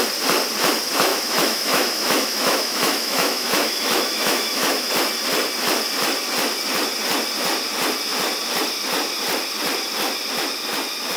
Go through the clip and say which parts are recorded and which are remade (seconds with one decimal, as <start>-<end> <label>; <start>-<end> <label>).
0.0-1.1 recorded; 1.1-4.9 remade; 4.9-11.2 recorded